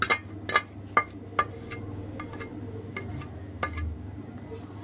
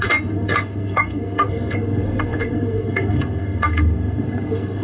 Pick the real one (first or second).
first